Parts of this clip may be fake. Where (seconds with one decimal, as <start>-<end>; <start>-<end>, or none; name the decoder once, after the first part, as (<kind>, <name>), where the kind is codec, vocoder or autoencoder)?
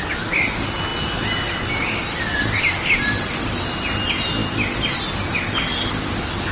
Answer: none